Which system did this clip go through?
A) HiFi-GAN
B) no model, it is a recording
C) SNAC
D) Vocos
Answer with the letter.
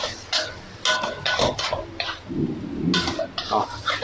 B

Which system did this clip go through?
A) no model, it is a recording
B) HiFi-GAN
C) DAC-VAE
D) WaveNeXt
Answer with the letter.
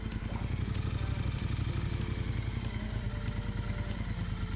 A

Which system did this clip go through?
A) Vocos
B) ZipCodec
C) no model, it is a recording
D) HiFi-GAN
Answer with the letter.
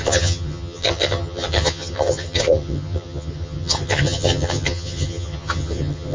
D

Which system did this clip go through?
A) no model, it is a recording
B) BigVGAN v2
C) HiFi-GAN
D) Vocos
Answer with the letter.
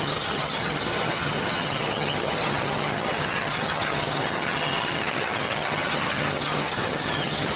C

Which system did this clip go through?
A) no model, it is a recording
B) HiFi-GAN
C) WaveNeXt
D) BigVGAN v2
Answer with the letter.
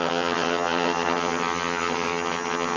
B